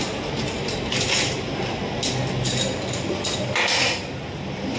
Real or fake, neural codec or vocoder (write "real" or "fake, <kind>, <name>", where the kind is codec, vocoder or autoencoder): real